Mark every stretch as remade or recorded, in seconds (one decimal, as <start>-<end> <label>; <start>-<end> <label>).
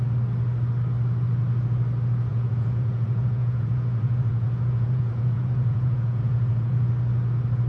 0.0-2.3 recorded; 2.3-6.9 remade; 6.9-7.7 recorded